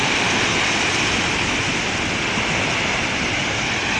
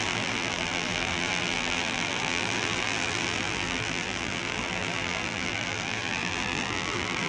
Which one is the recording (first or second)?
first